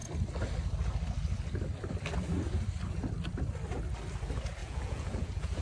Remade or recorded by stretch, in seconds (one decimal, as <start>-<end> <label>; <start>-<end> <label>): 0.0-4.6 recorded; 4.6-5.6 remade